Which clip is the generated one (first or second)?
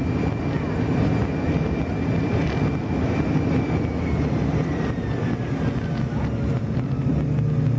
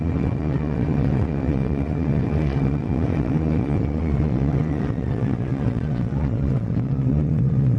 second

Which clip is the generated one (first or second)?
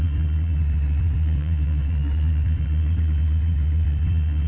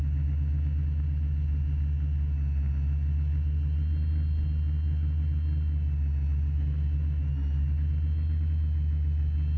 first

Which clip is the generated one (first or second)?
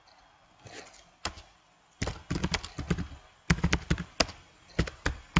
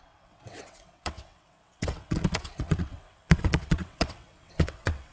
second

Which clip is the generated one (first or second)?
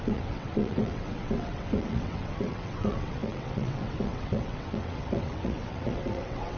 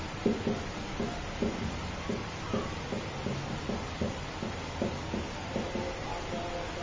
first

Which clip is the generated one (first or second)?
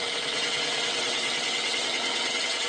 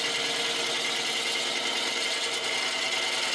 first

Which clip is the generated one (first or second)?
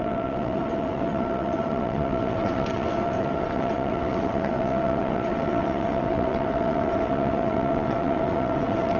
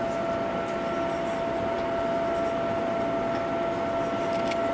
first